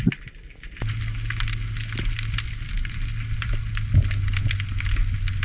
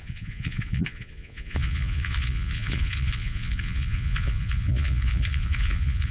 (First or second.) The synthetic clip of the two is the second